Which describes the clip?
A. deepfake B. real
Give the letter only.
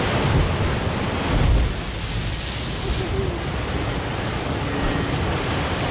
B